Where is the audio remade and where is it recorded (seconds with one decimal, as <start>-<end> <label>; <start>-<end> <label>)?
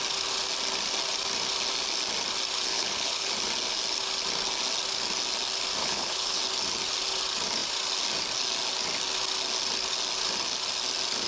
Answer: 0.0-2.7 recorded; 2.7-3.3 remade; 3.3-5.8 recorded; 5.8-6.4 remade; 6.4-11.3 recorded